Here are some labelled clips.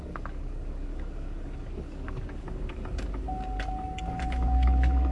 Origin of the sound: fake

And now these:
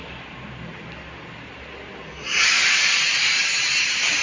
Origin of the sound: real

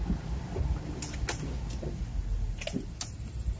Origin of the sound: real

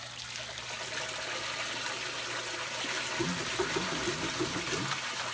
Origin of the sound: real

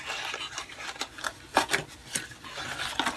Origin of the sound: real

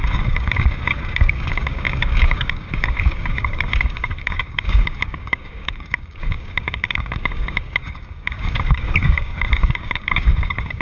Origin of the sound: fake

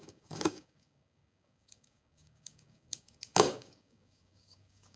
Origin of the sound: fake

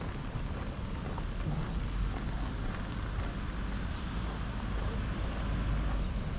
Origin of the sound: real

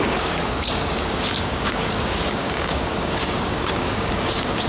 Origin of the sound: fake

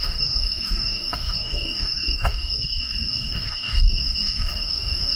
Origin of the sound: fake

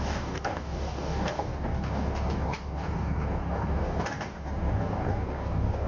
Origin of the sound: fake